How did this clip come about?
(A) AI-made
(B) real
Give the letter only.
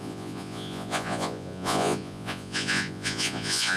A